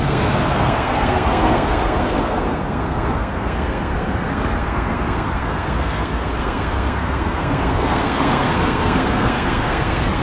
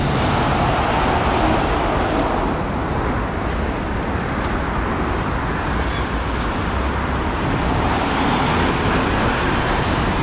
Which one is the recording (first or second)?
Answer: second